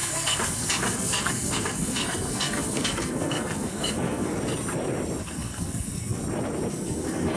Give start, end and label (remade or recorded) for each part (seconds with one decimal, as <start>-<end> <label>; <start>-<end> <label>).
0.0-4.3 remade; 4.3-5.2 recorded; 5.2-6.2 remade; 6.2-6.7 recorded; 6.7-7.4 remade